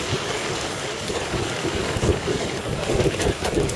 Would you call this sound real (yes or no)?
no